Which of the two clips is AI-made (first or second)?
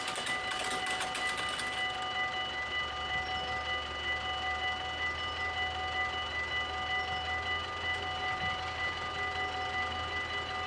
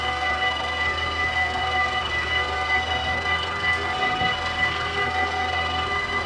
second